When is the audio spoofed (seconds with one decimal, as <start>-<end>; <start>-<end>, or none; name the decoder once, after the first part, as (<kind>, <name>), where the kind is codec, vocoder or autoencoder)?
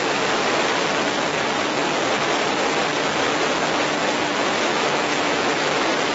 4.0-5.5 (autoencoder, DAC-VAE)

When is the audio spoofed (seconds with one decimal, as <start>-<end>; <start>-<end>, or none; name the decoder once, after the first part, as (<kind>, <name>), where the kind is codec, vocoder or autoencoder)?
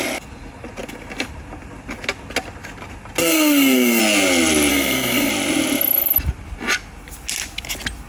3.2-4.0 (codec, SNAC); 4.7-5.3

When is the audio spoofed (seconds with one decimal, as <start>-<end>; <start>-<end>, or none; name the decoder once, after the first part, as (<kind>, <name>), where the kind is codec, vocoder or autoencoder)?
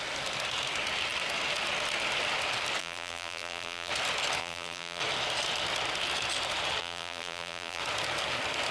2.8-3.9 (vocoder, BigVGAN v2); 4.4-5.0; 6.8-7.8